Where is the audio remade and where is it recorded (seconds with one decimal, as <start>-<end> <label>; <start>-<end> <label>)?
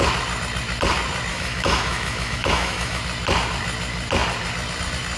0.0-1.3 recorded; 1.3-3.0 remade; 3.0-5.2 recorded